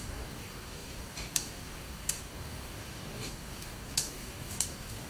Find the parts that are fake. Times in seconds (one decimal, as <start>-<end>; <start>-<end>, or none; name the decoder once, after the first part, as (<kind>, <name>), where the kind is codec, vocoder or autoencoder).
0.0-5.1 (codec, DAC)